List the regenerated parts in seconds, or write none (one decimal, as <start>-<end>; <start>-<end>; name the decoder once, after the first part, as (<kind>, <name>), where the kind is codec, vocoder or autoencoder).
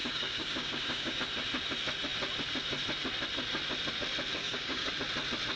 0.0-1.2 (codec, DAC); 4.4-4.9